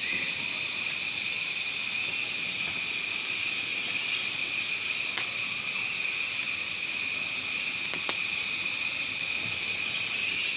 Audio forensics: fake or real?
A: real